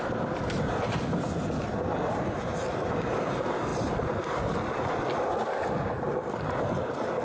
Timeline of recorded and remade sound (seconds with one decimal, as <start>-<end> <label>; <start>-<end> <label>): 0.0-7.2 recorded